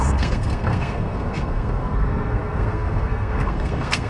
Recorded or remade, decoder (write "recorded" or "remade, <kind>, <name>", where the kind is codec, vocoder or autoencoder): remade, codec, SNAC